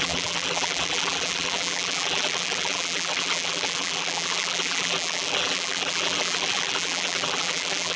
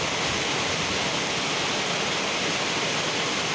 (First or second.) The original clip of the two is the second